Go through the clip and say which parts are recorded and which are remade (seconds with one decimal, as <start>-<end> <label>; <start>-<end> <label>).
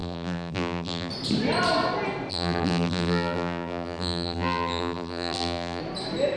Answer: 0.0-1.1 remade; 1.1-2.3 recorded; 2.3-5.8 remade; 5.8-6.4 recorded